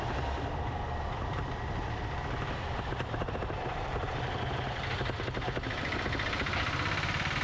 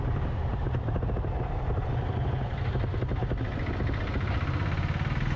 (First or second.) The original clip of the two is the second